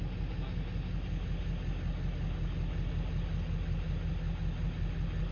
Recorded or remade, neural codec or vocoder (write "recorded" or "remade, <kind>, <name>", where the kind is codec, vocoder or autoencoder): recorded